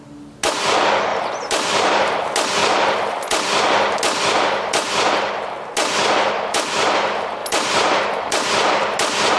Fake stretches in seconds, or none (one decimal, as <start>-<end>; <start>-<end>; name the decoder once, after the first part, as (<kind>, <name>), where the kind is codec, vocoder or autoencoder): 1.1-2.2 (vocoder, BigVGAN v2); 7.4-8.0